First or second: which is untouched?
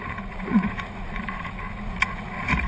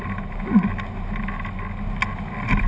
second